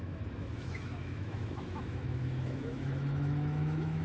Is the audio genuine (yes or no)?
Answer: no